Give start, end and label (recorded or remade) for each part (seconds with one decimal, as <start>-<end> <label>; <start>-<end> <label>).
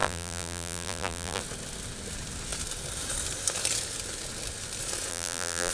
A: 0.0-1.4 remade; 1.4-5.1 recorded; 5.1-5.7 remade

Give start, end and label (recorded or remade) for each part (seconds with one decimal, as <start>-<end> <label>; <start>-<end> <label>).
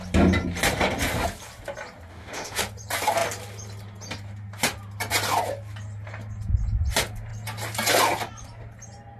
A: 0.0-2.1 recorded; 2.1-2.6 remade; 2.6-9.2 recorded